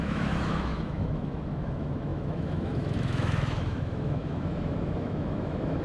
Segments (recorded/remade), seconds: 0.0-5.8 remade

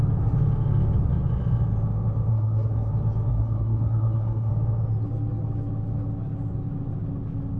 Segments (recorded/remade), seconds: 0.0-2.3 recorded; 2.3-2.9 remade; 2.9-3.3 recorded; 3.3-4.5 remade; 4.5-7.6 recorded